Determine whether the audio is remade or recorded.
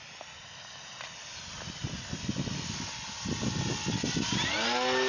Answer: recorded